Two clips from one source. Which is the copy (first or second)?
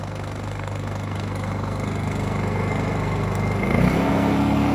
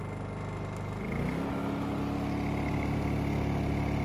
first